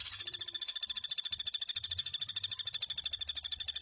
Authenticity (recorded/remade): remade